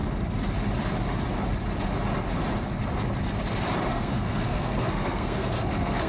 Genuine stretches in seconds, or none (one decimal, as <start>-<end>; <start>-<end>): 0.0-3.9